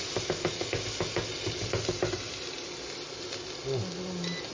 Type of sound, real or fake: real